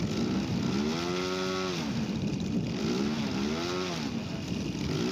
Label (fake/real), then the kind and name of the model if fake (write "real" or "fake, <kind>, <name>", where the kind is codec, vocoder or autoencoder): real